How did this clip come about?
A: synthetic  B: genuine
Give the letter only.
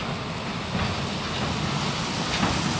B